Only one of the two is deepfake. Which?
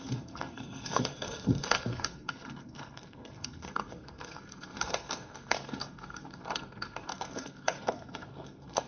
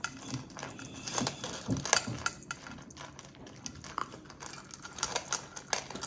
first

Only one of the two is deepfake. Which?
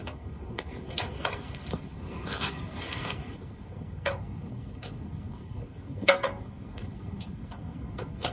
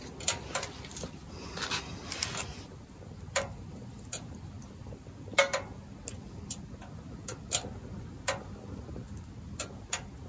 first